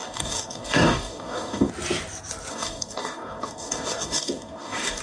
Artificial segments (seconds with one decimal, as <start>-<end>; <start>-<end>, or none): 0.0-1.7; 2.5-5.0

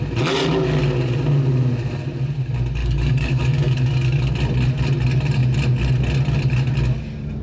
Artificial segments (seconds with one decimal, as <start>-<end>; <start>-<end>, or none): 2.8-4.3

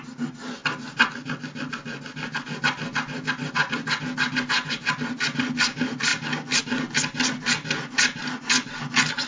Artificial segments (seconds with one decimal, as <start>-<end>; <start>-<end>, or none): none

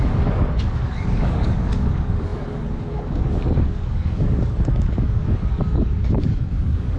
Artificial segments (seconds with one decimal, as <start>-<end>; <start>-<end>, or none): 0.0-7.0

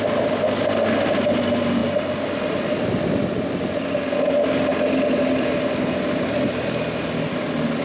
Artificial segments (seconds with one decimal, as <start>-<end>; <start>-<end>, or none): none

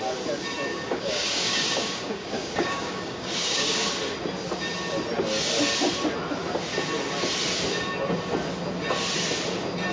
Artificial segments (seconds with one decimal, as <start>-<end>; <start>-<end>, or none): 0.7-3.9